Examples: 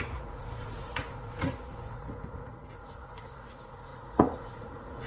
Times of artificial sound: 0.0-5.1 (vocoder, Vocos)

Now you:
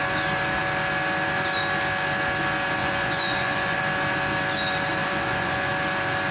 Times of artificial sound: 2.8-3.8 (vocoder, Vocos); 5.0-5.7

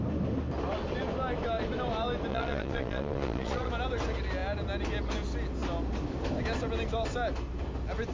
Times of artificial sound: 2.3-3.7 (vocoder, Vocos)

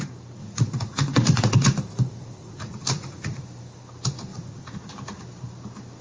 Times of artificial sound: 0.4-3.4 (vocoder, Vocos); 4.3-4.9

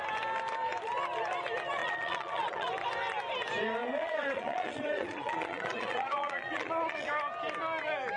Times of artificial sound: 1.8-2.7 (vocoder, Vocos); 3.8-7.1

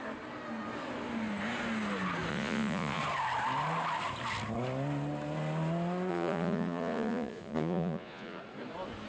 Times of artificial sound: 2.3-3.0 (vocoder, Vocos); 6.1-8.4

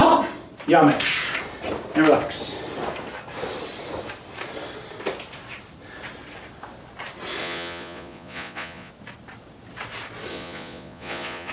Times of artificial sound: 7.4-8.9 (vocoder, Vocos); 10.3-11.5